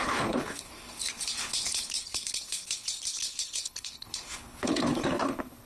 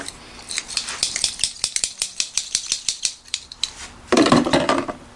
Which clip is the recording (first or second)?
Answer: second